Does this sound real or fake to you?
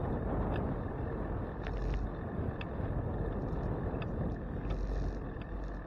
real